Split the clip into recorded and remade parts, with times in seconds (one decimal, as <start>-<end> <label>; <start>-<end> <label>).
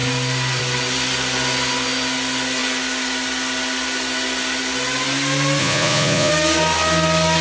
0.0-5.6 recorded; 5.6-6.3 remade; 6.3-7.4 recorded